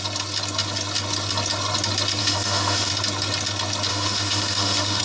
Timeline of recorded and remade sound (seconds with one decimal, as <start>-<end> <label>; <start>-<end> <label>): 0.0-2.2 recorded; 2.2-2.9 remade; 2.9-3.9 recorded; 3.9-5.0 remade